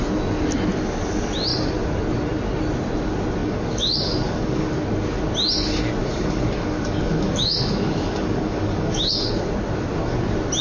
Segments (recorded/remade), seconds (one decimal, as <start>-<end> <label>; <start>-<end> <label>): 0.0-3.4 recorded; 3.4-4.7 remade; 4.7-6.0 recorded; 6.0-9.3 remade; 9.3-10.6 recorded